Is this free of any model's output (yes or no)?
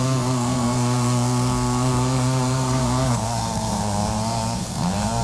no